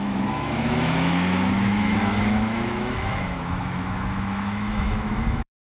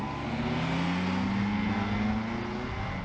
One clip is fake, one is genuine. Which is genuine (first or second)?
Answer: second